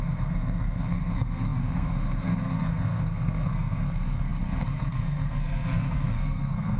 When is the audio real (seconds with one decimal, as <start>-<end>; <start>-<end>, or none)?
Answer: none